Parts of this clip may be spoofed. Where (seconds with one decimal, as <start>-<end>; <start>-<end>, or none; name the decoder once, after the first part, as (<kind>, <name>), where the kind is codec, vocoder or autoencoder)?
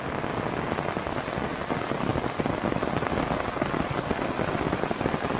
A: none